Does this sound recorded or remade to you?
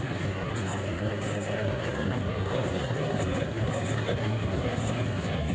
remade